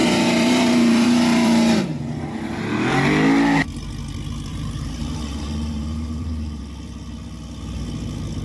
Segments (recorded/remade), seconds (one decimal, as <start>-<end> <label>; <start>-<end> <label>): 0.0-2.0 remade; 2.0-4.5 recorded; 4.5-6.6 remade; 6.6-8.4 recorded